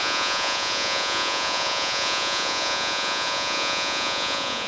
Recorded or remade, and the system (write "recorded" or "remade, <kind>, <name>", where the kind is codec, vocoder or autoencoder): remade, vocoder, Vocos